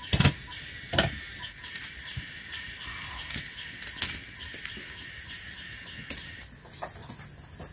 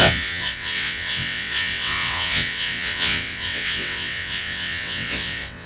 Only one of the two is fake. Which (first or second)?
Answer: second